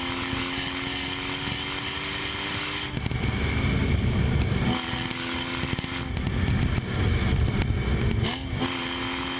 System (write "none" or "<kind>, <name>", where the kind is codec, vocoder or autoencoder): none